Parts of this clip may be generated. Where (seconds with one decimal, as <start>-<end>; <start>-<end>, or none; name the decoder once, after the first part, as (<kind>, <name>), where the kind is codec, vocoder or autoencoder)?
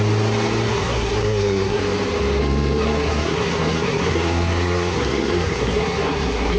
0.7-1.8 (codec, SNAC); 2.4-6.6